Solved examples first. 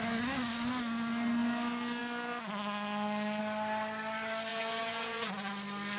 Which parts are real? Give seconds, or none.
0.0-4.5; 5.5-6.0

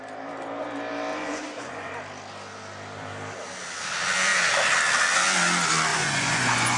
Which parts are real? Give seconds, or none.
0.0-1.1; 1.9-5.9

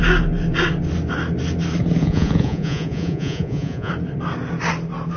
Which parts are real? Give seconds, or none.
0.0-2.0; 3.9-5.2

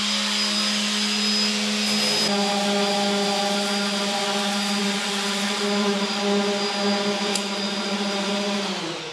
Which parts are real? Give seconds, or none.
0.0-4.8; 6.2-7.3; 8.3-9.1

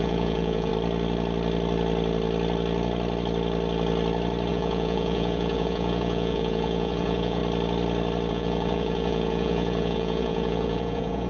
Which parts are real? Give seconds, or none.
0.7-4.5; 7.4-8.3

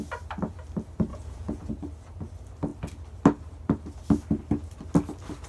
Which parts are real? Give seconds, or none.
0.0-1.1; 1.7-5.5

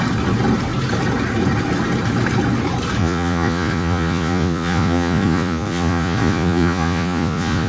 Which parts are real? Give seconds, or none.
0.0-3.0

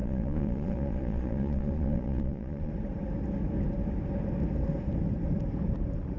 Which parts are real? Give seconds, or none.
2.7-6.2